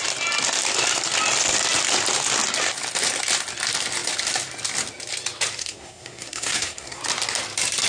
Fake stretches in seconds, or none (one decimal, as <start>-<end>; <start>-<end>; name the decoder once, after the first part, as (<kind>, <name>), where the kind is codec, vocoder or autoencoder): 5.6-7.0 (codec, SNAC)